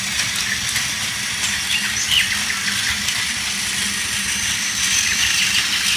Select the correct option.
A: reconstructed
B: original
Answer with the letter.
B